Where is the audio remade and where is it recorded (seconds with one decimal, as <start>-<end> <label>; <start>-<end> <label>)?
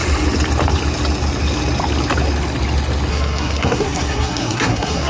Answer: 0.0-3.1 recorded; 3.1-5.1 remade